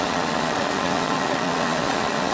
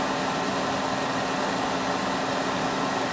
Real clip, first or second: second